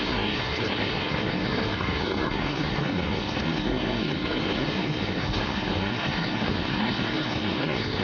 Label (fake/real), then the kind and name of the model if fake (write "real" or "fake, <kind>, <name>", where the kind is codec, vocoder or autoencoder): fake, codec, SNAC